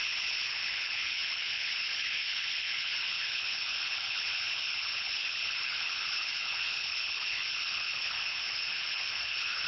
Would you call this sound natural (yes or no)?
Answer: no